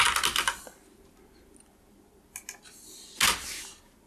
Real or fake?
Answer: real